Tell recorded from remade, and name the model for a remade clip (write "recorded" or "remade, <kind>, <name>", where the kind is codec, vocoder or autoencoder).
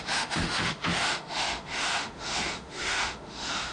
remade, autoencoder, DAC-VAE